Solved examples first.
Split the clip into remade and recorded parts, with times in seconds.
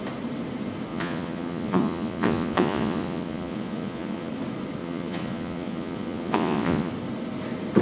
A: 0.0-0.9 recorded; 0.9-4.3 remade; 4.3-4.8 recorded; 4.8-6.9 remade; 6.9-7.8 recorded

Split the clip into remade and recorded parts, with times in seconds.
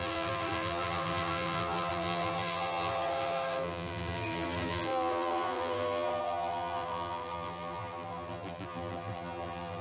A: 0.0-9.8 remade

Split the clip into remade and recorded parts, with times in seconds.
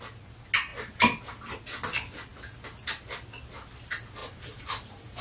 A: 0.0-0.7 recorded; 0.7-1.4 remade; 1.4-4.2 recorded; 4.2-5.2 remade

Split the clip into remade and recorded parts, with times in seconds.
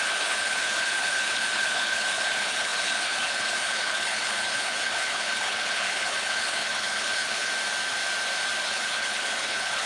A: 0.0-7.5 remade; 7.5-8.6 recorded; 8.6-9.9 remade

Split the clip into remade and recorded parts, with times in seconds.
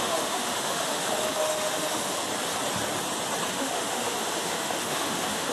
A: 0.0-2.2 remade; 2.2-3.5 recorded; 3.5-5.5 remade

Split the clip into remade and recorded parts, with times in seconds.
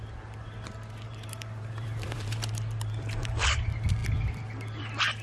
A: 0.0-0.4 recorded; 0.4-3.5 remade; 3.5-5.2 recorded